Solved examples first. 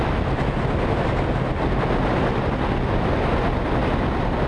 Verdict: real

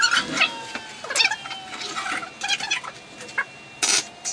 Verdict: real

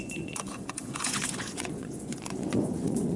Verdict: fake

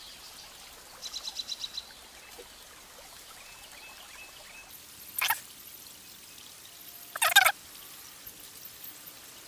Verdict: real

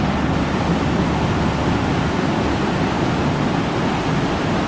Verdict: real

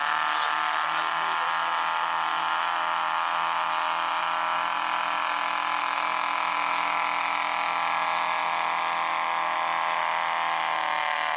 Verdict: real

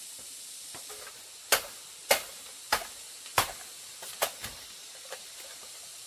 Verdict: real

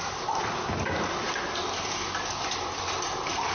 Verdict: real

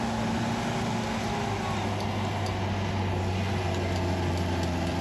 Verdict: real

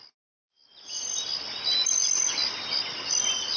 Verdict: real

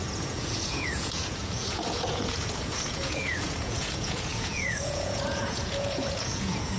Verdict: fake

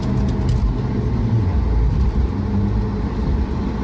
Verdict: real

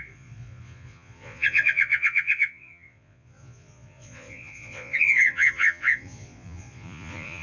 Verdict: fake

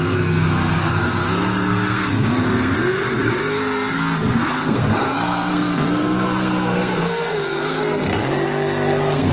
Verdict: fake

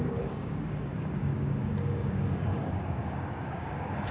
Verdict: fake